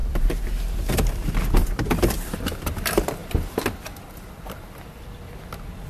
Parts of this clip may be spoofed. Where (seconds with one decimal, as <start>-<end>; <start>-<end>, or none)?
0.0-3.2; 4.3-5.9